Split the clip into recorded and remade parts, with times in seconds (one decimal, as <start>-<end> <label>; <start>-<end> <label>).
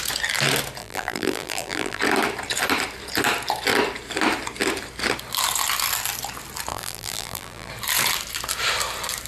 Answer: 0.0-0.8 recorded; 0.8-2.0 remade; 2.0-6.7 recorded; 6.7-7.7 remade; 7.7-9.3 recorded